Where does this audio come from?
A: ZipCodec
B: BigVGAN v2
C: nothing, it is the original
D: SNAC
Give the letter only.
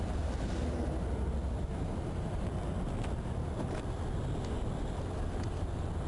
C